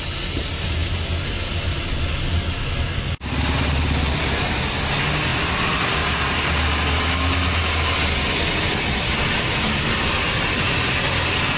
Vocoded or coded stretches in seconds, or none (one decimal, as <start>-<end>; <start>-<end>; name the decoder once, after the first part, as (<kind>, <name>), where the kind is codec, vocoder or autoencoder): none